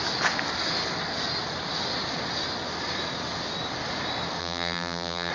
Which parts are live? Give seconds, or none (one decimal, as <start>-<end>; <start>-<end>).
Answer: 0.0-4.4

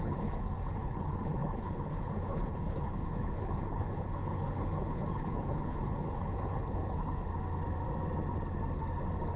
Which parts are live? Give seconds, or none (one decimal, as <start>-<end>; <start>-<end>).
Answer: 7.3-9.4

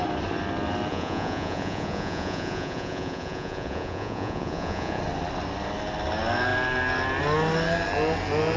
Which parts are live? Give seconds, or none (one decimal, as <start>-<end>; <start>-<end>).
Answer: 0.0-0.9; 5.0-8.6

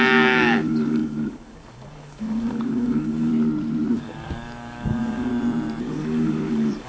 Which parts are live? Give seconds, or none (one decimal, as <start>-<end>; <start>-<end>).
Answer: 3.3-4.0; 5.3-5.8

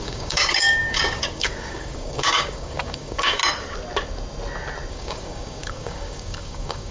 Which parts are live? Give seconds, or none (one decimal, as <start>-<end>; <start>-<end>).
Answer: 3.4-4.9

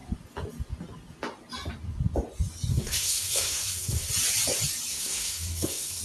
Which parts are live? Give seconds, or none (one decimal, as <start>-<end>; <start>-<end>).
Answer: 0.0-2.7; 4.1-4.9

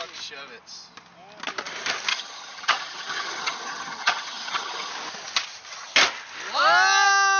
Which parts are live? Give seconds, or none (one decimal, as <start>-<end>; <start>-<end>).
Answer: 0.0-2.1; 4.9-7.4

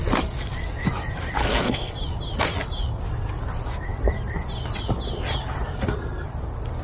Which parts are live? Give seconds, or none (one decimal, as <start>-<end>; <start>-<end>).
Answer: 0.0-1.4; 1.9-6.8